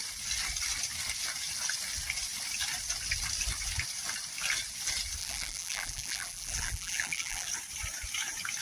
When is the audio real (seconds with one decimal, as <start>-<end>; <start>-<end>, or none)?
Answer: 0.0-5.2; 7.5-8.6